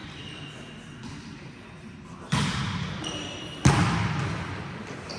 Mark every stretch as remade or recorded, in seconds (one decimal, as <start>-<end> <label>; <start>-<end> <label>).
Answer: 0.0-5.2 recorded